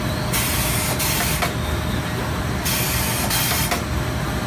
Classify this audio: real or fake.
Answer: real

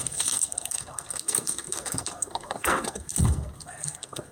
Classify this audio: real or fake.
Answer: fake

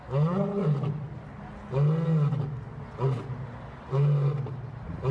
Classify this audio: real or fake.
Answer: real